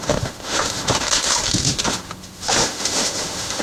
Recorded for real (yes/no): no